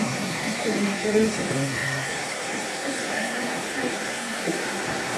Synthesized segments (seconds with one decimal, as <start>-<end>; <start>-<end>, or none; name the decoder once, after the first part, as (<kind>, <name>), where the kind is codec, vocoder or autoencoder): 0.0-5.2 (codec, SNAC)